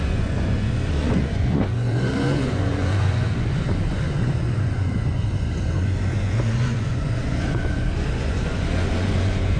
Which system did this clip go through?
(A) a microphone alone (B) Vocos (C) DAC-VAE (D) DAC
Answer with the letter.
B